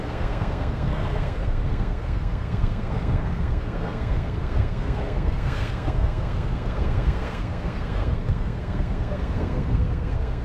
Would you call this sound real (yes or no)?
no